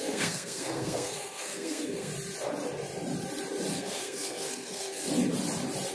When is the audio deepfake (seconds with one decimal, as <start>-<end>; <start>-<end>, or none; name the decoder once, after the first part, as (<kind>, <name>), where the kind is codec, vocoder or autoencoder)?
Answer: 0.0-2.1 (codec, SNAC); 3.7-5.1